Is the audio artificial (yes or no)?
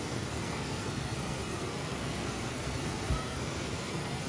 yes